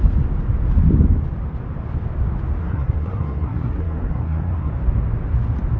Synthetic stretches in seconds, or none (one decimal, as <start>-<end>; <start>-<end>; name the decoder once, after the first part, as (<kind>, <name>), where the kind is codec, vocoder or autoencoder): 2.6-4.7 (codec, SNAC)